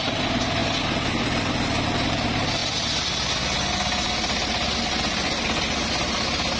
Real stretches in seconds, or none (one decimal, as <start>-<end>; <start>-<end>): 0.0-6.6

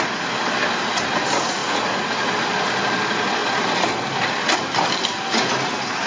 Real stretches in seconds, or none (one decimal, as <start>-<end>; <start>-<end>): 0.0-1.6; 2.3-6.1

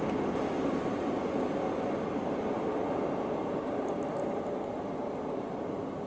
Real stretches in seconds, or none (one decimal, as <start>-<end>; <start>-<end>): 0.0-6.1

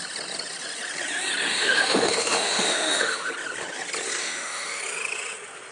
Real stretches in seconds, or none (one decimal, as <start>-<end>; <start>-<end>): 0.0-1.5; 3.3-4.2; 4.8-5.7

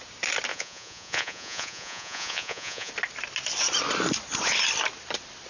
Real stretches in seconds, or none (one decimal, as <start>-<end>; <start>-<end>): 0.0-0.5; 2.9-5.5

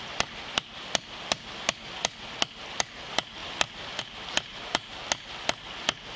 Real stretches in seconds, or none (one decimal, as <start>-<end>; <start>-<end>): 0.0-4.5; 5.0-6.2

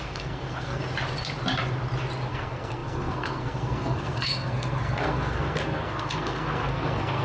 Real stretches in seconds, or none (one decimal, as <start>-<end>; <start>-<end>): 0.8-2.3

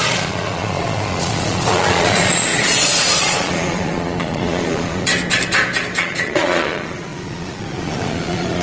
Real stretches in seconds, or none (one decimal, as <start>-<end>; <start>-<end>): 5.1-6.0